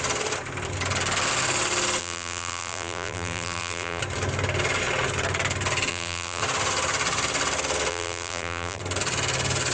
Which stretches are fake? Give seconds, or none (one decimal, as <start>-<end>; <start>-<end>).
2.0-4.0; 5.9-6.4; 7.9-8.8